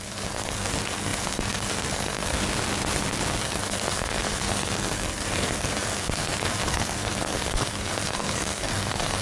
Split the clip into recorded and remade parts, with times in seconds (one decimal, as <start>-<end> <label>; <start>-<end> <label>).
0.0-2.4 remade; 2.4-3.4 recorded; 3.4-9.2 remade